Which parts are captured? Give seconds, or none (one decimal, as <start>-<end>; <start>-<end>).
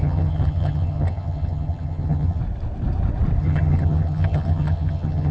2.4-3.4